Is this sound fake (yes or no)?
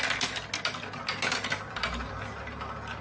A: no